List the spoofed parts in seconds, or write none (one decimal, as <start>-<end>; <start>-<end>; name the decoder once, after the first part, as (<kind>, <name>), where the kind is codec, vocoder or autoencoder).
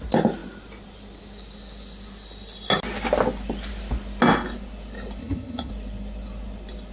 5.2-5.7 (vocoder, HiFi-GAN)